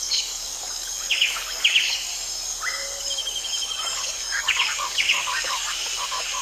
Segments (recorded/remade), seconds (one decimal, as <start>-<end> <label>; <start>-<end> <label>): 0.0-2.1 remade; 2.1-3.0 recorded; 3.0-6.4 remade